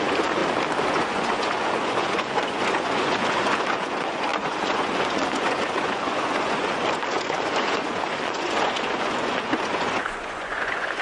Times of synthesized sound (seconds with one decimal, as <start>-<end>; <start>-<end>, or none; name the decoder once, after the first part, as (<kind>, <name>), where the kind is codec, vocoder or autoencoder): 0.0-0.4 (vocoder, Vocos); 0.9-11.0